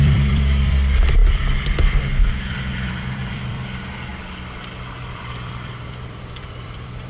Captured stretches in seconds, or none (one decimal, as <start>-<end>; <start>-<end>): 1.2-2.3; 4.1-4.7